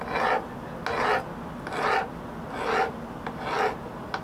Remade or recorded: recorded